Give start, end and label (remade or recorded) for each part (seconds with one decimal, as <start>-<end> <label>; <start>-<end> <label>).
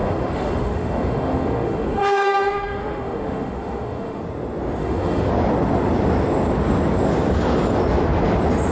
0.0-4.2 remade; 4.2-4.8 recorded; 4.8-5.3 remade; 5.3-8.7 recorded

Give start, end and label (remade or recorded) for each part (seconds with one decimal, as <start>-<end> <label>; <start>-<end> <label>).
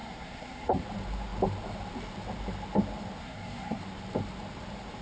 0.0-0.8 remade; 0.8-3.2 recorded; 3.2-3.8 remade; 3.8-5.0 recorded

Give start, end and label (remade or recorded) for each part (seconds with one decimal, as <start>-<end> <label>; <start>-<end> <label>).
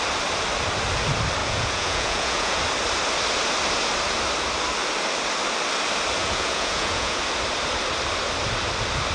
0.0-1.4 recorded; 1.4-2.6 remade; 2.6-6.2 recorded; 6.2-7.2 remade; 7.2-9.1 recorded